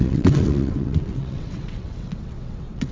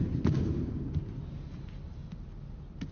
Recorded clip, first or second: second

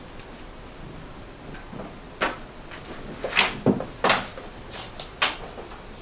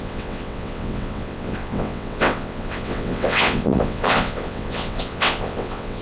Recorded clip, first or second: first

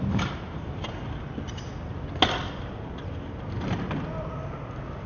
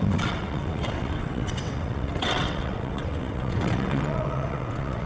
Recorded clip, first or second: first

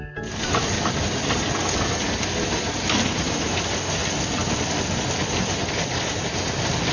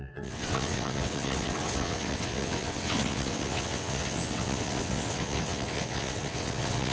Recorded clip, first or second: first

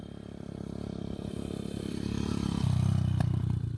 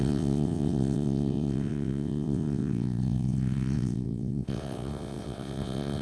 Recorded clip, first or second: first